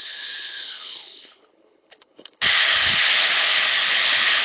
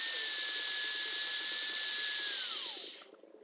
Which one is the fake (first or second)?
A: first